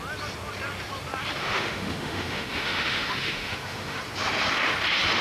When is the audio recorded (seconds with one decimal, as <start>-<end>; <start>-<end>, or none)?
0.0-1.4; 4.0-5.2